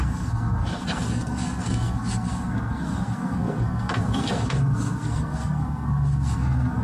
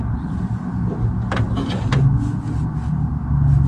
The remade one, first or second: first